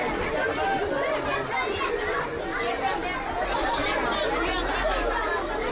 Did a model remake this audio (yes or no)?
no